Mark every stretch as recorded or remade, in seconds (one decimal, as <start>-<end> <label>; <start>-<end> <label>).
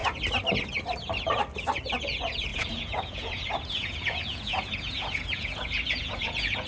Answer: 0.0-2.0 recorded; 2.0-6.7 remade